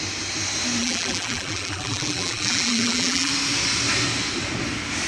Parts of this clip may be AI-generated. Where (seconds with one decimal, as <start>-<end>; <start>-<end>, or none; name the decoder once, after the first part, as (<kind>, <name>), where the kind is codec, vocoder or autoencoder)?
0.8-3.3 (vocoder, BigVGAN v2)